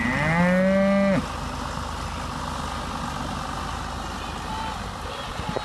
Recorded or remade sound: recorded